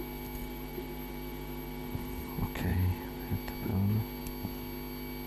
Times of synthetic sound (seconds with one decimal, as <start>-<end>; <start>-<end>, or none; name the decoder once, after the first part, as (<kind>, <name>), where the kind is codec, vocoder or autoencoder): 0.4-2.3 (vocoder, BigVGAN v2); 2.7-3.3